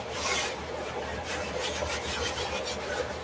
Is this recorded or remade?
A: remade